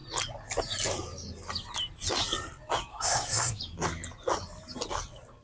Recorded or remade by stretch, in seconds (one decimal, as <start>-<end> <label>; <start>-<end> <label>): 0.0-2.9 recorded; 2.9-3.6 remade; 3.6-5.4 recorded